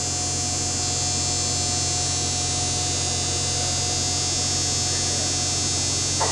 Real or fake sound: real